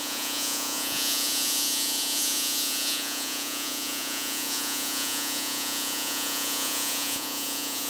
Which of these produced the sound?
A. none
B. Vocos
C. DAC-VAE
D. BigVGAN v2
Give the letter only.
B